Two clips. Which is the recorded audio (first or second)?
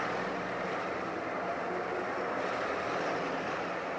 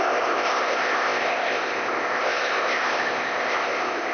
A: first